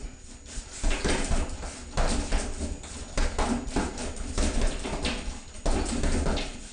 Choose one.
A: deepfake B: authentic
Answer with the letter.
B